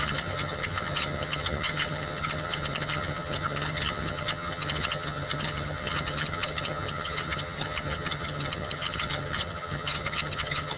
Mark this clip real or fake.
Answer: fake